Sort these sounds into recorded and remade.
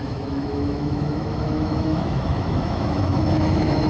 remade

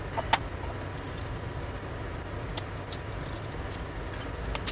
recorded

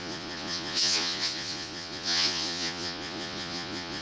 remade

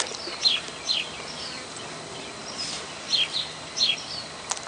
recorded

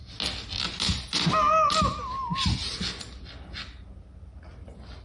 recorded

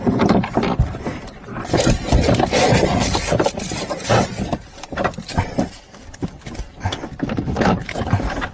remade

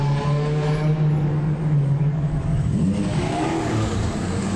remade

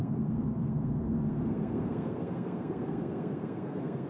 remade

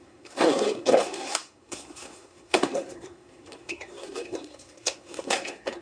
remade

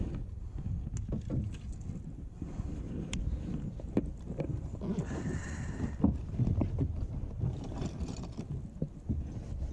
recorded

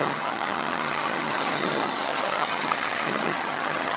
remade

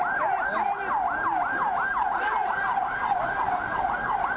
recorded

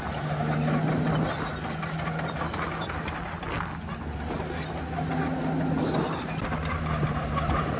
recorded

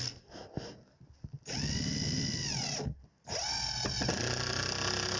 recorded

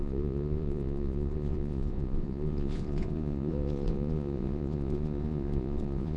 remade